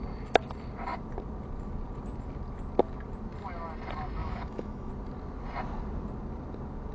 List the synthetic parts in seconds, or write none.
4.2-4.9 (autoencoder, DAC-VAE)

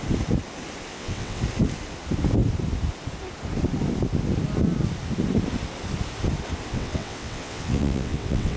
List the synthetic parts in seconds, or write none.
0.9-1.4 (vocoder, WaveNeXt); 6.7-8.6

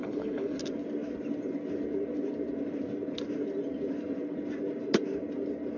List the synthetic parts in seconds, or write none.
0.0-0.6 (codec, HILCodec)

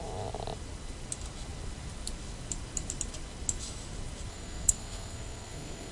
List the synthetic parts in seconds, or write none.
4.3-5.9 (codec, SNAC)

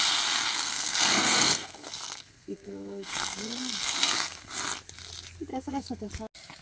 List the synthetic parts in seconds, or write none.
0.5-4.5 (codec, SNAC); 5.5-6.1